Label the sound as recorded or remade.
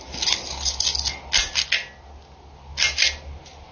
recorded